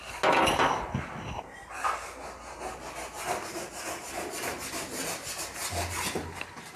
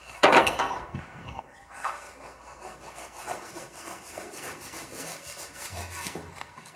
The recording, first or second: first